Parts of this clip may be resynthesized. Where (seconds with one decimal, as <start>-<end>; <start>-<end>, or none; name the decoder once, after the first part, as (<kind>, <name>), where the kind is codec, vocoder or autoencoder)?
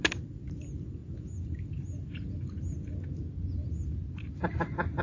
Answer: none